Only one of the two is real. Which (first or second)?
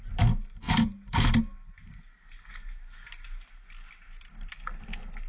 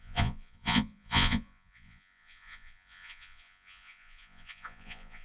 first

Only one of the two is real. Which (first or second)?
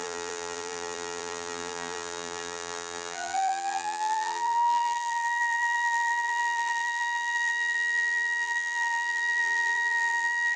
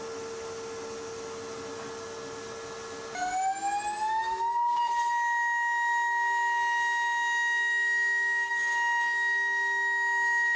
second